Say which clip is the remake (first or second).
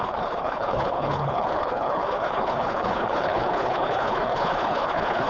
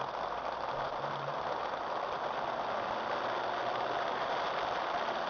first